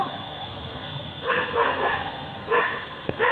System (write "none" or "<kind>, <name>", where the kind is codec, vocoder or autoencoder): codec, SNAC